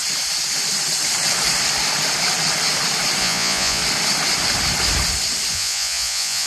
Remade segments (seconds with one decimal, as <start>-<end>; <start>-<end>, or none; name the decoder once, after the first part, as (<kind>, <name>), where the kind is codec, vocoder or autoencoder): 3.2-3.8 (vocoder, Vocos); 5.5-6.5